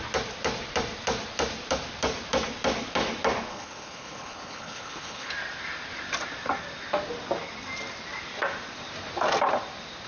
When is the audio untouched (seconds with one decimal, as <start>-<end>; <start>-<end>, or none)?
0.0-3.5; 5.3-10.1

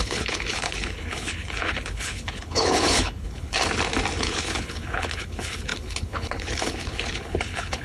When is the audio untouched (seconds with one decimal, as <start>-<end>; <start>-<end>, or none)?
3.6-4.2

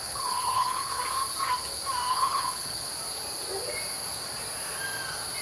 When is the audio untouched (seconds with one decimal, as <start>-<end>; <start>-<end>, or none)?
1.0-2.1; 2.9-5.4

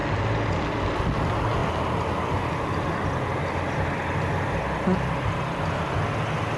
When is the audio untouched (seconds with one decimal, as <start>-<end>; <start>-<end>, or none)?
0.0-6.6

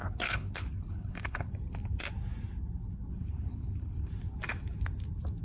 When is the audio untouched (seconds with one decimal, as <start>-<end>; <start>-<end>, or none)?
1.5-3.1; 4.1-5.4

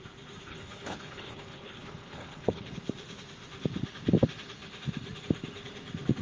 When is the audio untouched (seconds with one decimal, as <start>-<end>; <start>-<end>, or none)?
0.0-0.5; 2.7-6.2

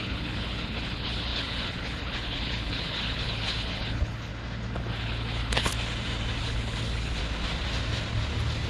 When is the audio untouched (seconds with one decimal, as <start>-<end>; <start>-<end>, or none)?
4.3-4.8; 5.7-6.4; 7.2-8.7